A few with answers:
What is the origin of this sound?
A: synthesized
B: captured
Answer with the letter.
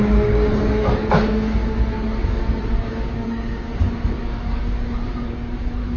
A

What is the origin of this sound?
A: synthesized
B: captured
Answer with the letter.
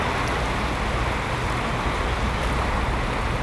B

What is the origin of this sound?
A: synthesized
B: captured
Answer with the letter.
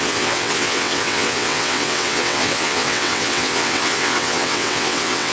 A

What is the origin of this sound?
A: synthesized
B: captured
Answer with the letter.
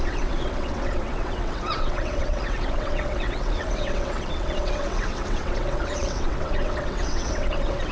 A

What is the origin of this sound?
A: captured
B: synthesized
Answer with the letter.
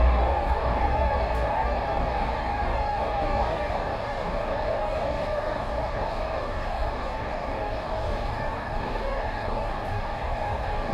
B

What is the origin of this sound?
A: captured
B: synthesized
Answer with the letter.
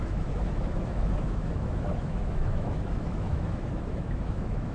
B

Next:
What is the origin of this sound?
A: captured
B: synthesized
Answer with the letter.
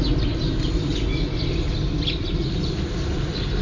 A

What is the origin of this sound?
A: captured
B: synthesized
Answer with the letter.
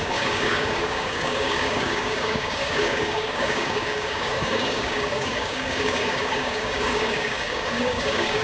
B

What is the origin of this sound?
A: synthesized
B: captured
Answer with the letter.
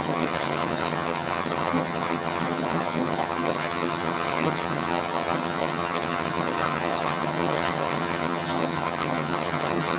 A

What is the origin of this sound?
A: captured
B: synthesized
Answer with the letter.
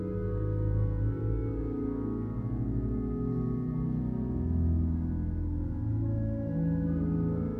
A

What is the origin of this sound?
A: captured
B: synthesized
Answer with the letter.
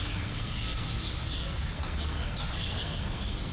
B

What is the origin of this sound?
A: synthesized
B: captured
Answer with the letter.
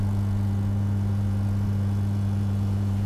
A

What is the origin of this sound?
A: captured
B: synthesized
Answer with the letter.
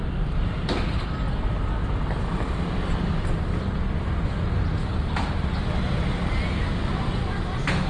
A